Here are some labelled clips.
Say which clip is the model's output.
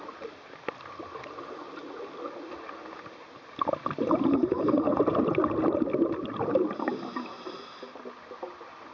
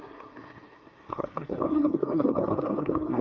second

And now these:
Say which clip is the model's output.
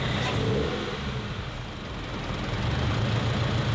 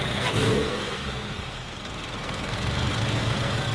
second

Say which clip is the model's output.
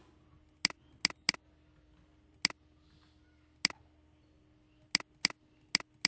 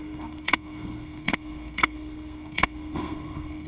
second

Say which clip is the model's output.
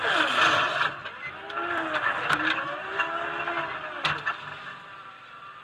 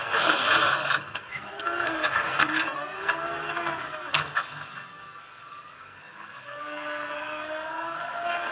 second